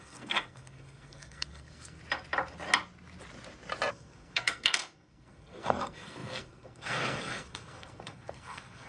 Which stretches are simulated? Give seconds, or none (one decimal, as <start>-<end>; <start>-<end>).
0.0-2.0; 3.9-8.9